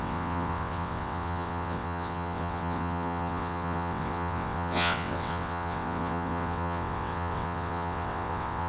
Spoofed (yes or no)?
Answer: yes